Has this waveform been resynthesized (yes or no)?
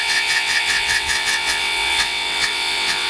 yes